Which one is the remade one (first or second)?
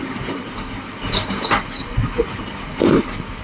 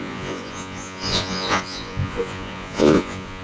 second